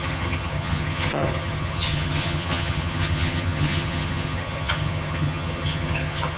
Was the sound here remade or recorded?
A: remade